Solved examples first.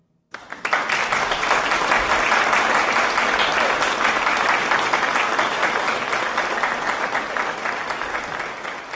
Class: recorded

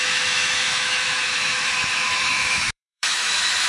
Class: remade